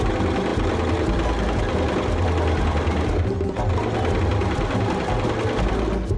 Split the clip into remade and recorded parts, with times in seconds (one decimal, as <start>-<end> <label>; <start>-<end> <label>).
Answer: 0.0-6.2 recorded